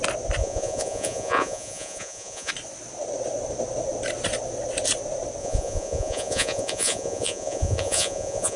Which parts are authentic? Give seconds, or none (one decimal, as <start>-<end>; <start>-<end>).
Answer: 0.0-0.4; 2.5-5.4